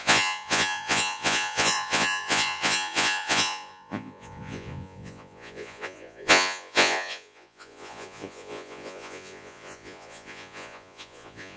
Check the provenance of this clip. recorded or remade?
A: remade